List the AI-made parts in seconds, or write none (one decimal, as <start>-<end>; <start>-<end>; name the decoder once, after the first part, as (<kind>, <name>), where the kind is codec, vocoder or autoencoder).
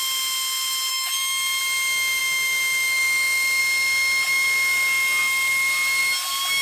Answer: 0.9-1.6 (autoencoder, DAC-VAE); 2.2-3.6